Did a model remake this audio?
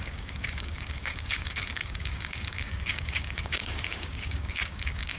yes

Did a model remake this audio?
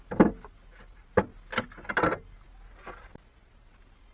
no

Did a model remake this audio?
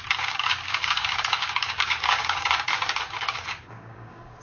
yes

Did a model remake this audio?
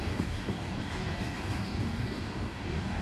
yes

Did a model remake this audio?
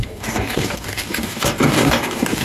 yes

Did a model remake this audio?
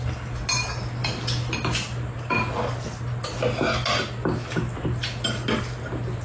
no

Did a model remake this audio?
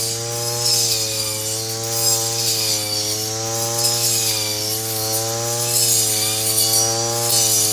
no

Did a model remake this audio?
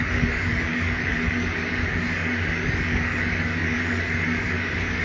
yes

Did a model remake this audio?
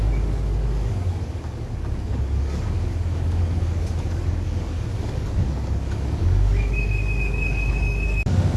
yes